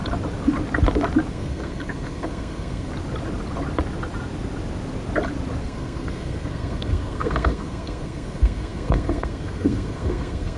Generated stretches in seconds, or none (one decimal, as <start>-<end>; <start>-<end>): 1.3-2.9; 5.6-10.6